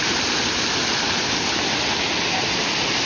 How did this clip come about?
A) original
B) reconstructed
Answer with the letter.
A